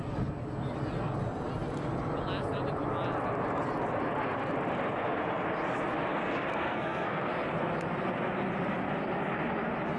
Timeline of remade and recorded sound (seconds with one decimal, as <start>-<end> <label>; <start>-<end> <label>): 0.0-6.1 recorded; 6.1-7.3 remade; 7.3-10.0 recorded